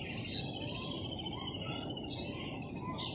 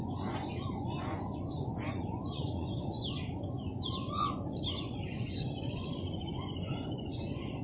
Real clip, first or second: first